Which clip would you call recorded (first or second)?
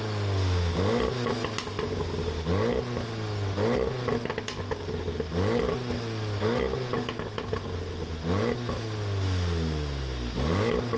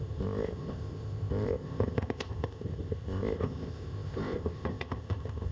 first